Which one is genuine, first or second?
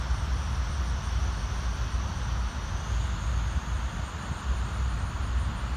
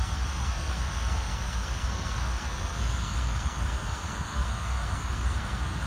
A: first